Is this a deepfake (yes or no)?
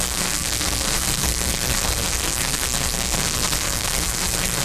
yes